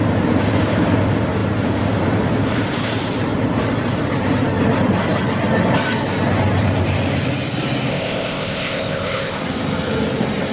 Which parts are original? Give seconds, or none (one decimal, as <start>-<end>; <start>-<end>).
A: 0.0-7.9; 9.4-10.5